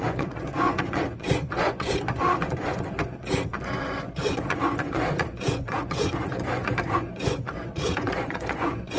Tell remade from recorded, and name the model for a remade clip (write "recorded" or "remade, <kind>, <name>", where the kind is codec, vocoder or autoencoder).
remade, vocoder, Vocos